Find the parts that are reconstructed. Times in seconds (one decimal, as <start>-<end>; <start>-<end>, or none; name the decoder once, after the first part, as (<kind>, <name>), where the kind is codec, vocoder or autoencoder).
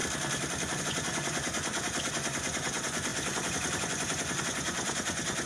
0.8-5.5 (vocoder, Vocos)